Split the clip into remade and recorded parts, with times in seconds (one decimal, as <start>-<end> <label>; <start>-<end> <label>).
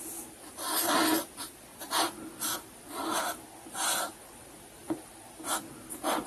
0.0-1.7 recorded; 1.7-3.4 remade; 3.4-6.3 recorded